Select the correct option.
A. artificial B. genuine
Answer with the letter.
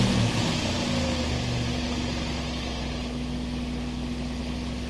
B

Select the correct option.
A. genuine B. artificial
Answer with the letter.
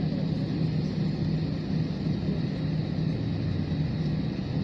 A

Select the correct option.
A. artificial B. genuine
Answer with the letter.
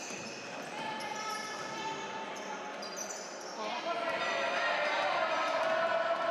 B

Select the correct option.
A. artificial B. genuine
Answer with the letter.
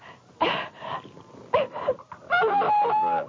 A